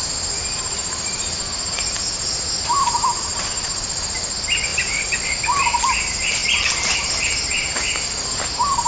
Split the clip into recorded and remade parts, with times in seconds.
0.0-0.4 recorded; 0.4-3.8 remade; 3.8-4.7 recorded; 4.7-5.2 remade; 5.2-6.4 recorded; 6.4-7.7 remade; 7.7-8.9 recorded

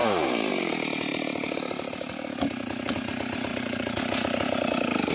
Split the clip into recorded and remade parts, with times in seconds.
0.0-0.7 remade; 0.7-1.1 recorded; 1.1-2.3 remade; 2.3-3.5 recorded; 3.5-5.1 remade

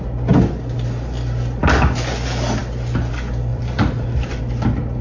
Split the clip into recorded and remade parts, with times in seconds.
0.0-3.5 recorded; 3.5-4.4 remade; 4.4-5.0 recorded